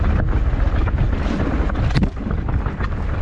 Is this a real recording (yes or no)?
yes